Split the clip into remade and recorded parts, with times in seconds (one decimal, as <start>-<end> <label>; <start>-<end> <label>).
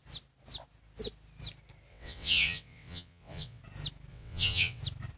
0.0-1.9 recorded; 1.9-3.6 remade; 3.6-4.1 recorded; 4.1-4.8 remade; 4.8-5.2 recorded